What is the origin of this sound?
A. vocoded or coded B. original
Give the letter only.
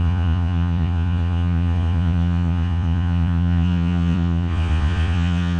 A